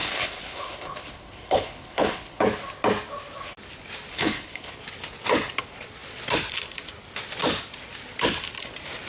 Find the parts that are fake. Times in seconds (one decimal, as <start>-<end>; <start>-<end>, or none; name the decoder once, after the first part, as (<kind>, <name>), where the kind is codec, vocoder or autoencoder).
0.0-2.4 (codec, HILCodec); 4.1-4.8